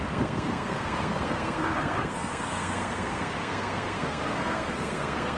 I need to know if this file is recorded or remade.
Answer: remade